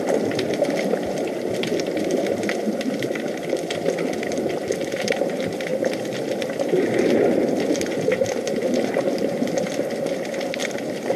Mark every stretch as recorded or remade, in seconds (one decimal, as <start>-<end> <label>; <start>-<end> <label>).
0.0-11.2 recorded